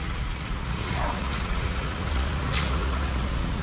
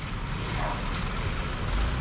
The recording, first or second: second